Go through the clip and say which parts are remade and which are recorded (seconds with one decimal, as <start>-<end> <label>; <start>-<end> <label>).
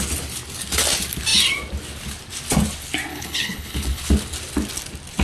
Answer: 0.0-3.1 recorded; 3.1-4.0 remade; 4.0-5.2 recorded